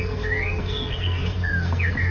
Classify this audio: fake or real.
fake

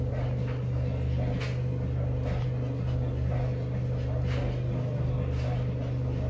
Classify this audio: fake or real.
real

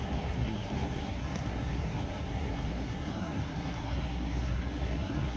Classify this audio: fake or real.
fake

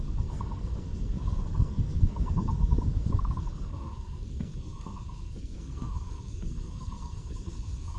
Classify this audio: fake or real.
fake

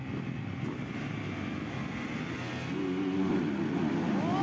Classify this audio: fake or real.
real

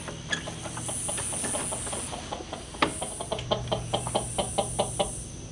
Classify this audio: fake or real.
real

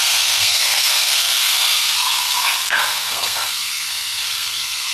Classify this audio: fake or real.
fake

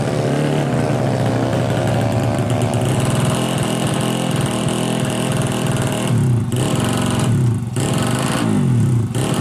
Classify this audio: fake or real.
real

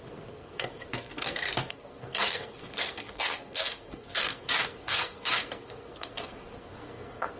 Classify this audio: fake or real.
fake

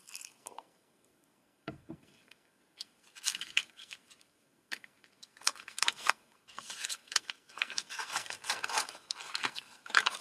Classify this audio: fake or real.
fake